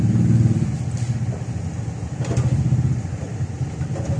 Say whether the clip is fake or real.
real